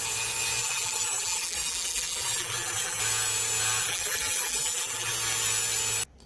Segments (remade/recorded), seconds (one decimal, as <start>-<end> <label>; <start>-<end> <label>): 0.0-0.6 recorded; 0.6-3.0 remade; 3.0-3.8 recorded; 3.8-5.1 remade; 5.1-6.3 recorded

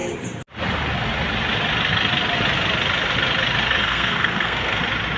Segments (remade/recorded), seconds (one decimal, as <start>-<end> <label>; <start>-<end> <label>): 0.0-3.8 recorded; 3.8-4.8 remade; 4.8-5.2 recorded

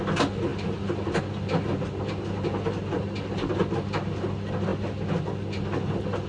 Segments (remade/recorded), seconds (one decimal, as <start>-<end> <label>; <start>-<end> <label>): 0.0-6.3 recorded